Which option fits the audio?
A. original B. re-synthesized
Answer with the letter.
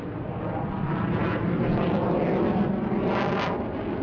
A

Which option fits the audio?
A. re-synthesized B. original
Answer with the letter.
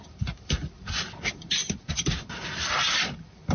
A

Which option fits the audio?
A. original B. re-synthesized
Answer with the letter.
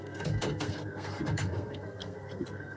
B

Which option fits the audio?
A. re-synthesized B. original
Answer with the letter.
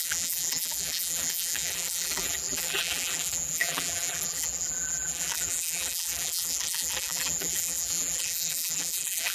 A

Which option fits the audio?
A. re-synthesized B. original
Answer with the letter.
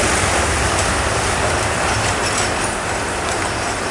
B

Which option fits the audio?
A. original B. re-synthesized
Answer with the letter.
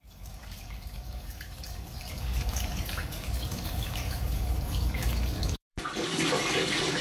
B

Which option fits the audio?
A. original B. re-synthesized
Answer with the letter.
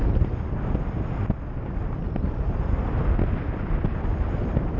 A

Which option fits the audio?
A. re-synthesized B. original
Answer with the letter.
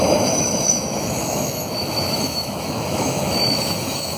A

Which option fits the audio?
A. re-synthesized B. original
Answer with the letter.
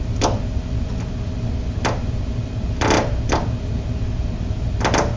B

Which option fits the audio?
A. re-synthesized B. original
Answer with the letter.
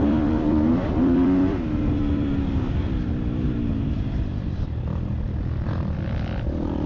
A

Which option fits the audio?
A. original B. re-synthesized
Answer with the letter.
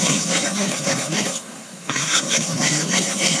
B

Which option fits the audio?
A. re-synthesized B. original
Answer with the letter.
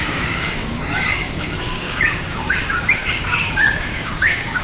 A